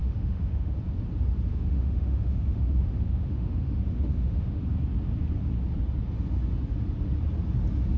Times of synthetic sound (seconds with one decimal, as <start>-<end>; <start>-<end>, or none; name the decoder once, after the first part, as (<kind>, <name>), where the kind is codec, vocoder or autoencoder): 0.0-0.8 (autoencoder, DAC-VAE); 1.5-4.6